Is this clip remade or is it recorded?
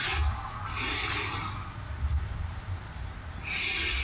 recorded